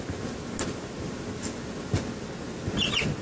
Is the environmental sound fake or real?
real